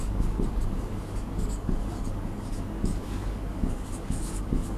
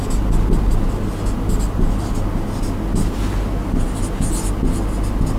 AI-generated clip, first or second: first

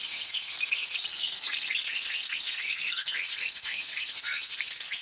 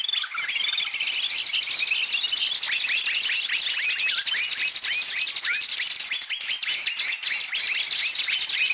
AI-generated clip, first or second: first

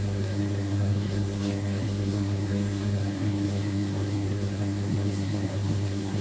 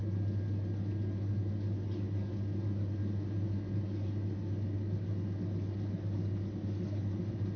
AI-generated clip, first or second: first